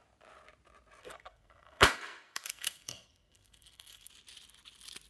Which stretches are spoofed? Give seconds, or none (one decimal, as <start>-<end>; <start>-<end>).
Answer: 1.0-4.1